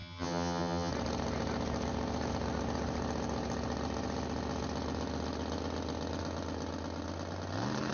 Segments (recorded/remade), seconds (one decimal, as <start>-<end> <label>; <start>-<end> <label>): 0.0-0.9 remade; 0.9-7.9 recorded